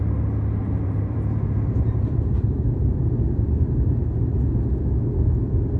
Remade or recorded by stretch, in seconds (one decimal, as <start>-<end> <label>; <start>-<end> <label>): 0.0-0.6 recorded; 0.6-3.9 remade; 3.9-5.8 recorded